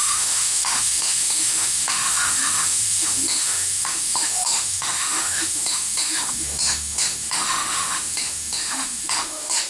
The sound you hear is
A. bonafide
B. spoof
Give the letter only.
B